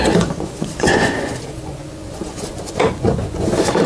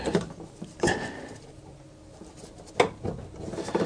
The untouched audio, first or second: second